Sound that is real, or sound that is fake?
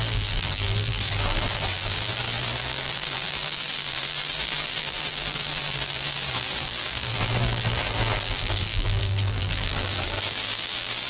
fake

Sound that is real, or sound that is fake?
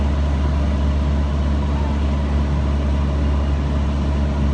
real